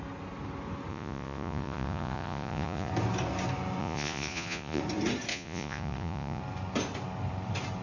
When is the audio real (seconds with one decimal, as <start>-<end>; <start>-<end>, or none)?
0.0-0.9; 2.9-3.8; 4.8-5.3; 6.4-7.8